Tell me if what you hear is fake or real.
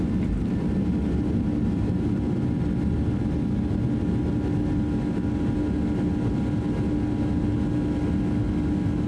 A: real